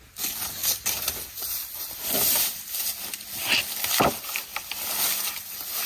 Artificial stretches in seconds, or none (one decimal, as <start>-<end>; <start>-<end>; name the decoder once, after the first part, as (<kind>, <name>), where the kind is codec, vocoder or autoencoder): none